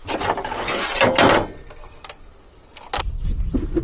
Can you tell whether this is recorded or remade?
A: recorded